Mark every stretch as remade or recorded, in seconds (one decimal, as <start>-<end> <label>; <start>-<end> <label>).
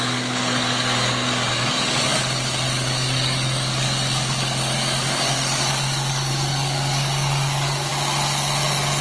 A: 0.0-7.9 remade; 7.9-9.0 recorded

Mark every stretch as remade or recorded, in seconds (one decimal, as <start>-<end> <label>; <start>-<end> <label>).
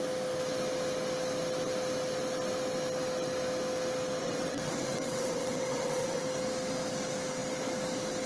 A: 0.0-4.2 recorded; 4.2-6.2 remade; 6.2-8.3 recorded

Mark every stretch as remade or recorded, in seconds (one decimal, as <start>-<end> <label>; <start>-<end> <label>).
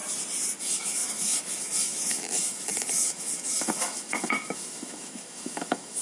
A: 0.0-0.6 recorded; 0.6-6.0 remade